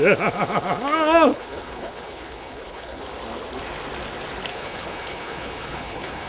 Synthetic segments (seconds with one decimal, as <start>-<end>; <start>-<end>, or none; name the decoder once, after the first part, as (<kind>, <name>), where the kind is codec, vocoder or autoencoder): 1.3-3.0 (codec, HILCodec); 4.5-6.3